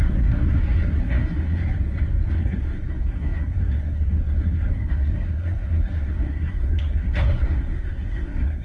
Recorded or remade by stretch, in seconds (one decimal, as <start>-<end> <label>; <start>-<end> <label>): 0.0-1.6 remade; 1.6-2.3 recorded; 2.3-8.6 remade